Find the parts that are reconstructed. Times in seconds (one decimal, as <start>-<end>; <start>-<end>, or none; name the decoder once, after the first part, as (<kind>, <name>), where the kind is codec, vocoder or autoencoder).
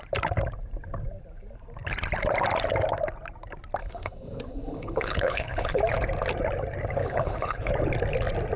3.8-5.8 (codec, HILCodec); 7.0-7.7